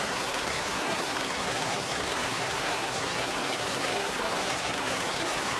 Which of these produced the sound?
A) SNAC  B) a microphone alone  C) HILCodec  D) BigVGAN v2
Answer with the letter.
A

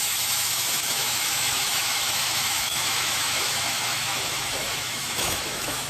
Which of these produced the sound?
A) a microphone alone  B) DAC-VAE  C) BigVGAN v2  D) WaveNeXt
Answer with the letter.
B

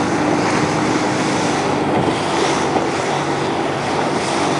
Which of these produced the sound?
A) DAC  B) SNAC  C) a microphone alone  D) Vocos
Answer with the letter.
C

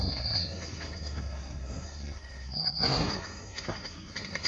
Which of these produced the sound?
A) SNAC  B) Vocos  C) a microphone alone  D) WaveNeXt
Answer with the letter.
A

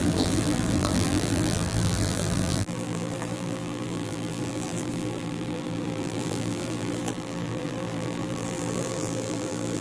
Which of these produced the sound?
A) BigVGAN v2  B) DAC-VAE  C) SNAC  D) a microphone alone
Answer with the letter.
A